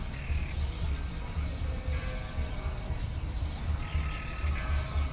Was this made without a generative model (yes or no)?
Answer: yes